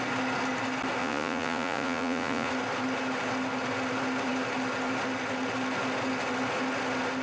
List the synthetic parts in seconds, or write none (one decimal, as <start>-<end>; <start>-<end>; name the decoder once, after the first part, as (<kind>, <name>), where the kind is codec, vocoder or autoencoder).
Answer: 1.0-2.5 (vocoder, Vocos)